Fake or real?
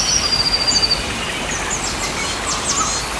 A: real